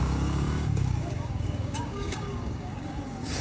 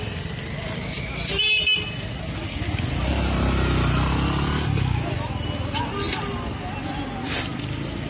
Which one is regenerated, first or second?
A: first